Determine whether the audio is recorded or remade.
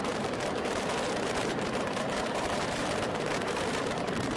remade